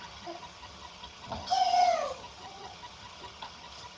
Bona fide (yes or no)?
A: no